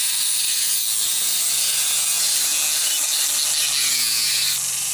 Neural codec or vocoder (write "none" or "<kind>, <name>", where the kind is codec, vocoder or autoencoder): none